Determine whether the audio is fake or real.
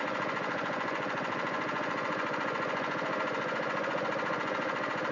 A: fake